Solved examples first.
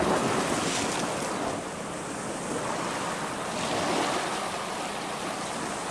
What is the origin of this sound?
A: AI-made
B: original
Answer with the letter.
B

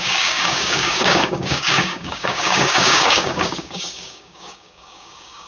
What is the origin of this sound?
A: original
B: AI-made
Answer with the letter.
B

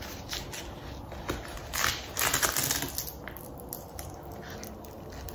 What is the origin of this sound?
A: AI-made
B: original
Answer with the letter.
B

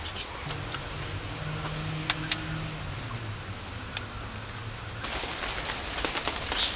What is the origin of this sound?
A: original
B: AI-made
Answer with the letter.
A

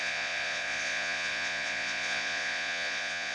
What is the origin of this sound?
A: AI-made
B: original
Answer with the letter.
A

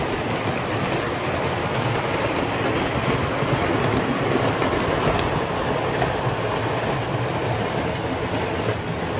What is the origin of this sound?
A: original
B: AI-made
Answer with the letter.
A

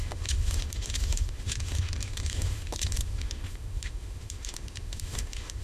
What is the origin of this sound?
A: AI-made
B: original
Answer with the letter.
A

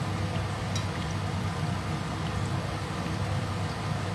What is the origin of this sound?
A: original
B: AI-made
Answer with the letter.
A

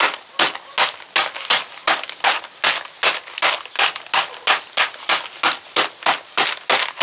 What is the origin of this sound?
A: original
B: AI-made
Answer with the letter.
A